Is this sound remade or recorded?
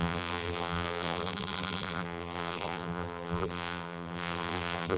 remade